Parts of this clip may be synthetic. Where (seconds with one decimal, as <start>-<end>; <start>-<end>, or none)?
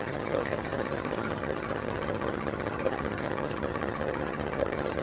0.0-5.0